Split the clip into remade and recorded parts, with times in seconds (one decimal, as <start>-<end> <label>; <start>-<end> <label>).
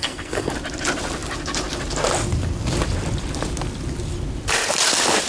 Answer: 0.0-0.5 remade; 0.5-5.3 recorded